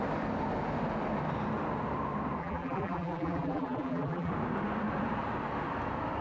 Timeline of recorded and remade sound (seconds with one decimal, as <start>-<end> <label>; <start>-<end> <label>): 0.0-2.4 recorded; 2.4-4.3 remade; 4.3-6.2 recorded